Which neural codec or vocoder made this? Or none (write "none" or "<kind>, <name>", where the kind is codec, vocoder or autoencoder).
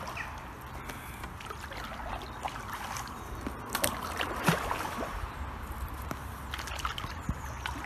none